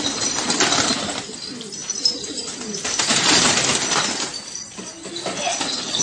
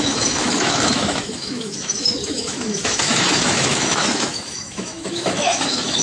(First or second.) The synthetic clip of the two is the second